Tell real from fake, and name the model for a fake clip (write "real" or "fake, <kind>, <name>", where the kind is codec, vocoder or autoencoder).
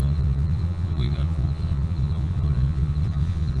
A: fake, vocoder, Vocos